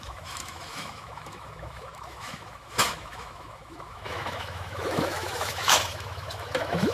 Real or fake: fake